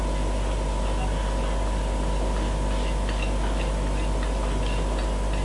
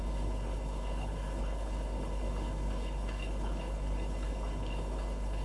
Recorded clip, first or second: first